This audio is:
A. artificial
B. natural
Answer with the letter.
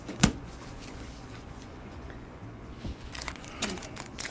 A